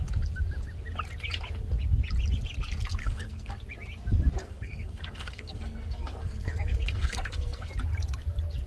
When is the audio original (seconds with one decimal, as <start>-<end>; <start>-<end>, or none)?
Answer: 0.0-3.0; 3.5-4.4; 7.7-8.7